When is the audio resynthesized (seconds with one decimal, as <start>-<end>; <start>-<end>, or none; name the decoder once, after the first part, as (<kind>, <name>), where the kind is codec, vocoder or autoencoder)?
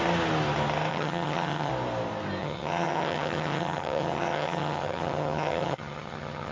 0.9-1.7 (vocoder, HiFi-GAN); 2.4-6.5